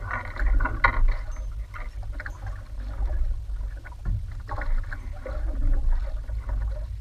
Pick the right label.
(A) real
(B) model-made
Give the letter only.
A